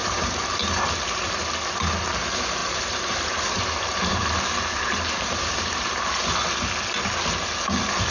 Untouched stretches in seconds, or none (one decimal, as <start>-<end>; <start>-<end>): 0.6-2.6; 5.9-8.1